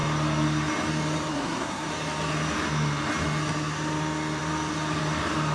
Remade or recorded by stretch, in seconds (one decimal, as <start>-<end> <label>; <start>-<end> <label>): 0.0-1.3 recorded; 1.3-1.9 remade; 1.9-5.5 recorded